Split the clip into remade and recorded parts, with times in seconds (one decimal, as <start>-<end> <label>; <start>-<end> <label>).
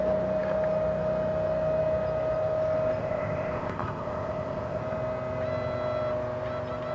0.0-3.0 recorded; 3.0-4.8 remade; 4.8-6.9 recorded